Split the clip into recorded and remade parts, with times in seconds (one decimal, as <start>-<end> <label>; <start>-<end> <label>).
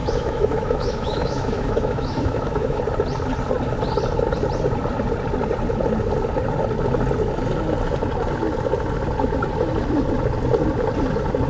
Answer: 0.0-2.8 remade; 2.8-11.5 recorded